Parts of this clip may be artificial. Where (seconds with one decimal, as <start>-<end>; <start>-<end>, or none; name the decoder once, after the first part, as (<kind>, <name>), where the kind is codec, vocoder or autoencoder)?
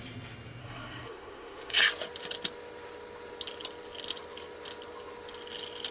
0.6-1.8 (codec, SNAC)